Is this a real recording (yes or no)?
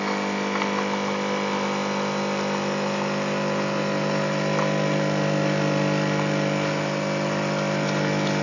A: yes